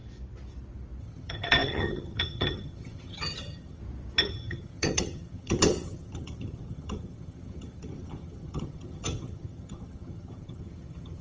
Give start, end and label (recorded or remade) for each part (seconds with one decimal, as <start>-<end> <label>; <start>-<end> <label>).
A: 0.0-1.0 recorded; 1.0-3.8 remade; 3.8-4.3 recorded; 4.3-11.2 remade